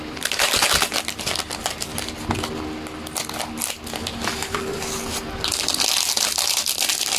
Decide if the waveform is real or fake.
real